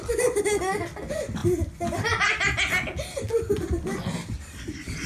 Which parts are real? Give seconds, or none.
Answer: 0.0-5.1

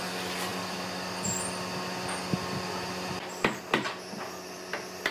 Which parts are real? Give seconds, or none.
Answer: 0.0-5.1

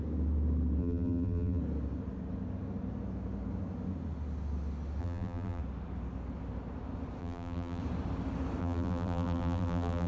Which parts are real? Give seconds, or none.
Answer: 0.0-0.8; 1.6-5.0; 5.6-7.2; 7.8-8.6

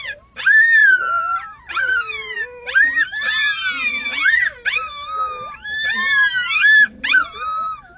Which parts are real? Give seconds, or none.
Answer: 0.0-8.0

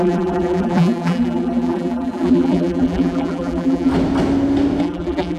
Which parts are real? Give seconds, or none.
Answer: 3.9-4.8

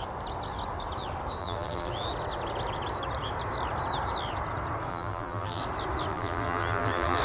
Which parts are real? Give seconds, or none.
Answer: 0.0-1.4; 1.9-4.9; 5.6-6.1